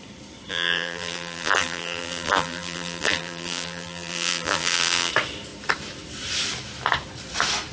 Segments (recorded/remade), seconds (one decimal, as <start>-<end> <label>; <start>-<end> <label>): 0.0-0.5 recorded; 0.5-5.1 remade; 5.1-7.7 recorded